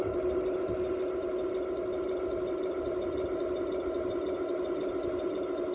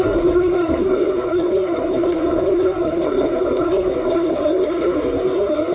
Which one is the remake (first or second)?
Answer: second